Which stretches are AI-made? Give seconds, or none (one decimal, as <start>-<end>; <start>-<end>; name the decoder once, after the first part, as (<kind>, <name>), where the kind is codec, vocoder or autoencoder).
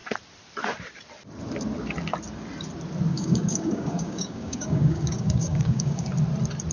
3.1-6.1 (codec, DAC)